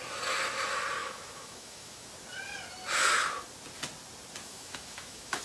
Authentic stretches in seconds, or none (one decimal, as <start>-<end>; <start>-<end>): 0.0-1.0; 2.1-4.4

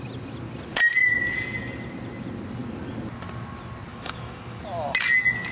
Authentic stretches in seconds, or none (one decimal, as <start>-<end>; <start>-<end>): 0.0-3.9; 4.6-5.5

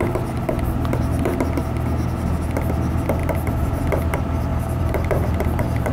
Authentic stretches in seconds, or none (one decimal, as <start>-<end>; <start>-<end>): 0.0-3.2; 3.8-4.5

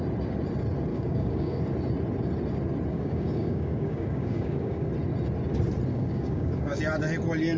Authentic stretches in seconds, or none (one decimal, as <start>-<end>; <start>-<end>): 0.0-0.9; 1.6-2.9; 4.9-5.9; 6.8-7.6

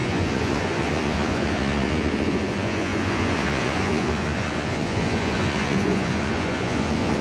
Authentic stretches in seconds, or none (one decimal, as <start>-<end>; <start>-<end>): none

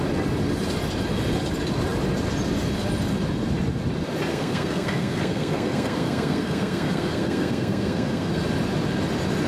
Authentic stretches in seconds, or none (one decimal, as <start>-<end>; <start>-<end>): 0.0-4.3; 8.4-9.5